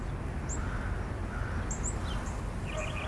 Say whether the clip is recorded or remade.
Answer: recorded